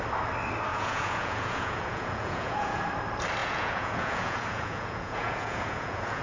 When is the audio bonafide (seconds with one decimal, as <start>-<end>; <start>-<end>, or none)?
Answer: 0.0-0.7; 2.8-3.4